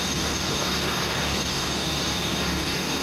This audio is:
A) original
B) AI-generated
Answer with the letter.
B